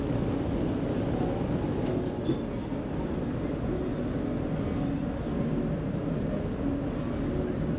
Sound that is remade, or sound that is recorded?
recorded